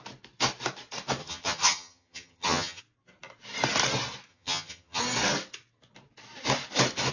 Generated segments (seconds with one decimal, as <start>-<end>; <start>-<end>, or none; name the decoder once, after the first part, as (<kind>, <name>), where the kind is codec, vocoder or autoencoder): 1.2-2.8 (vocoder, HiFi-GAN); 4.3-5.0